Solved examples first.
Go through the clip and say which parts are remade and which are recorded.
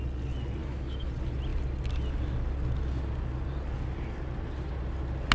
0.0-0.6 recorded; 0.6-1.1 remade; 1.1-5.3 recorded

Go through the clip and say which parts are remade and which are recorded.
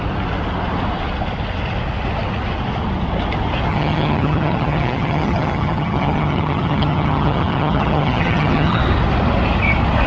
0.0-3.7 recorded; 3.7-8.8 remade; 8.8-10.1 recorded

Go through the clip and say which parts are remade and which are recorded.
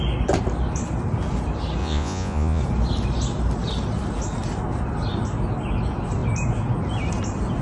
0.0-1.8 recorded; 1.8-2.6 remade; 2.6-7.6 recorded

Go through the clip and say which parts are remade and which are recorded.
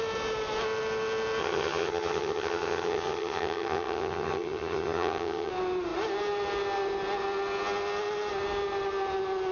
0.0-1.4 recorded; 1.4-5.5 remade; 5.5-9.5 recorded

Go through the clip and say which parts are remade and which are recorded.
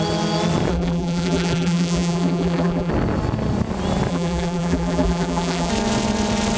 0.0-0.7 recorded; 0.7-2.9 remade; 2.9-4.1 recorded; 4.1-5.7 remade; 5.7-6.6 recorded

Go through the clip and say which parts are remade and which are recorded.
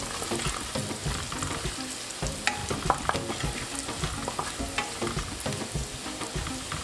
0.0-6.8 recorded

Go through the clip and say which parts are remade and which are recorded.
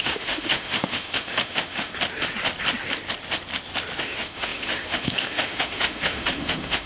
0.0-1.9 remade; 1.9-4.0 recorded; 4.0-6.9 remade